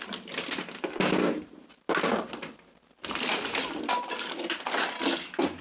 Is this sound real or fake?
real